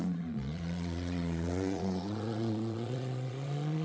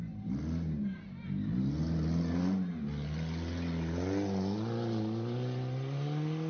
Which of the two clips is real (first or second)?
second